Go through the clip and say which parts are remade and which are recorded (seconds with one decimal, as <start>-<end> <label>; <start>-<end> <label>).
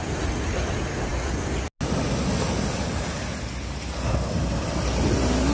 0.0-5.5 recorded